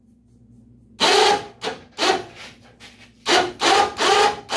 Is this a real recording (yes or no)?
yes